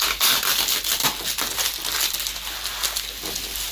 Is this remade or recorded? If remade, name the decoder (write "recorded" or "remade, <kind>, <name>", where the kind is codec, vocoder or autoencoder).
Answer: recorded